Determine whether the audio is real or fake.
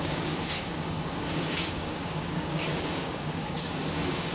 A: fake